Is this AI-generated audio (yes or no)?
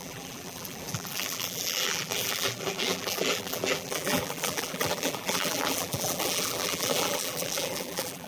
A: yes